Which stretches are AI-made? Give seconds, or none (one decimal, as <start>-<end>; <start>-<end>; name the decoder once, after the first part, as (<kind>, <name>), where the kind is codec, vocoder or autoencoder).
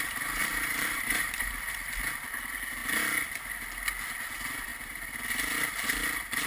0.4-1.5 (vocoder, BigVGAN v2)